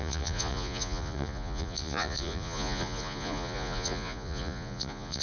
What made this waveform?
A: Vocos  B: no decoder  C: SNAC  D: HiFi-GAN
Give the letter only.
A